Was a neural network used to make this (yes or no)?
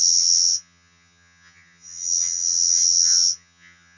yes